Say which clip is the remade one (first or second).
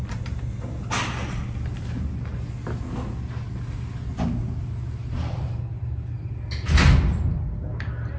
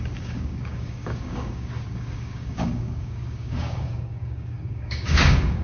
second